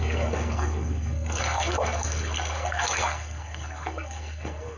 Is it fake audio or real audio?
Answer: fake